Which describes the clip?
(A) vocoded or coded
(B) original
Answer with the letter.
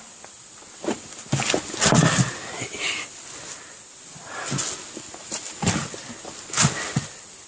B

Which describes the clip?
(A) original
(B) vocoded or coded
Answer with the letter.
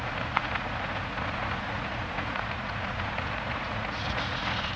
B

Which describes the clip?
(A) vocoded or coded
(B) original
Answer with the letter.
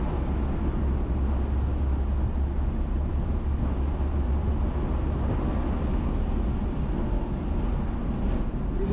B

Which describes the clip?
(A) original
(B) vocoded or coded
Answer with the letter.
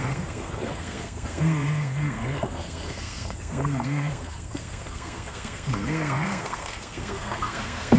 B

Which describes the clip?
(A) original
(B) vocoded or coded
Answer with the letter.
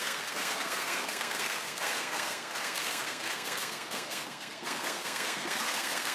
B